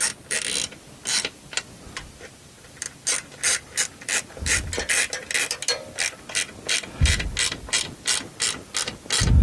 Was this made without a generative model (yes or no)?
yes